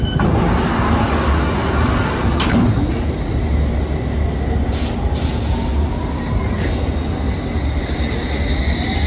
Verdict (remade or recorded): recorded